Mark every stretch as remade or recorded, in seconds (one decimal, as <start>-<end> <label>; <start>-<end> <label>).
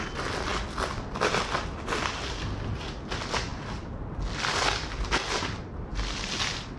0.0-6.8 recorded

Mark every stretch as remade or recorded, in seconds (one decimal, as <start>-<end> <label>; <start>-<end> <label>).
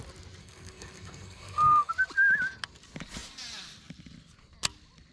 0.0-0.4 recorded; 0.4-1.9 remade; 1.9-5.1 recorded